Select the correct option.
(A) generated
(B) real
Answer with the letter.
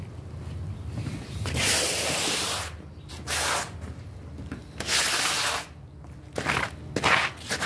B